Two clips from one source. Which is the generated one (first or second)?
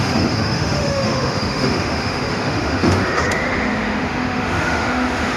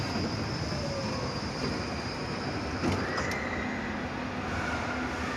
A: first